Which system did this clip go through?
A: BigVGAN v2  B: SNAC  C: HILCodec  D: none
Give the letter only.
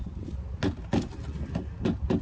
D